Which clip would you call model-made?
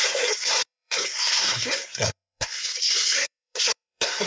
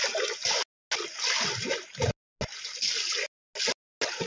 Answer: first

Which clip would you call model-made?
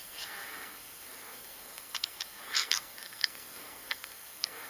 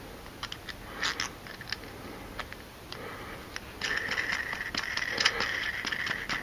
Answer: first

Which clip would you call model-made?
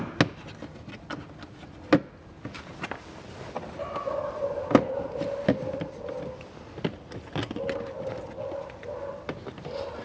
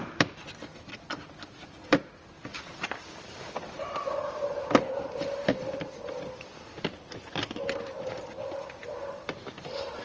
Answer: second